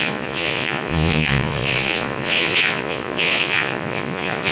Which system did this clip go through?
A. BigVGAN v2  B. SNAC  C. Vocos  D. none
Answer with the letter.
C